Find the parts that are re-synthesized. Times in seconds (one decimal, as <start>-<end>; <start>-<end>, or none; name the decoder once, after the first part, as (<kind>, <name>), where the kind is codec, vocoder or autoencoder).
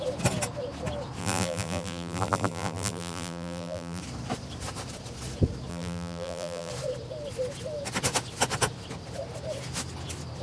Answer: 1.2-4.0 (vocoder, BigVGAN v2); 5.7-6.7